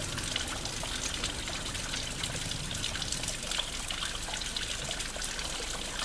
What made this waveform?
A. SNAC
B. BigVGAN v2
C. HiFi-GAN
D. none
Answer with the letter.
D